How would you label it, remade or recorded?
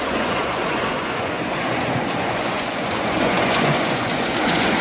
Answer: remade